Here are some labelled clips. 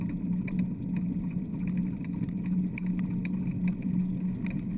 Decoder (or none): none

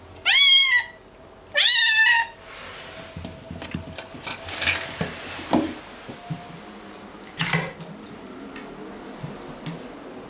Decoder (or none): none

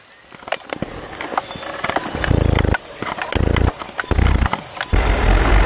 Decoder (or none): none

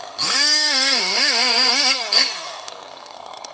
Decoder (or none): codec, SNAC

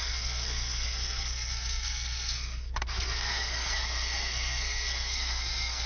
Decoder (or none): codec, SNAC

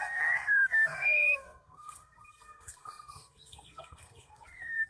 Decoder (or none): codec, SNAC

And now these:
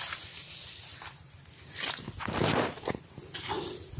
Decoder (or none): none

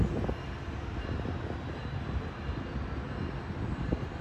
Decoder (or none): none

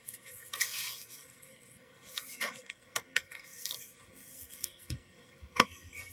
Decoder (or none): codec, SNAC